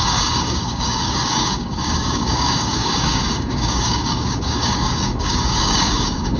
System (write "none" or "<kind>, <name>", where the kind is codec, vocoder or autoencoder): codec, DAC